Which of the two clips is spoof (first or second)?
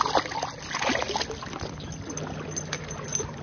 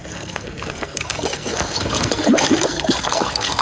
second